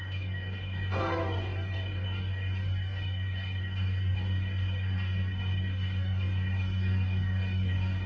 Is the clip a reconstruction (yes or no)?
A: yes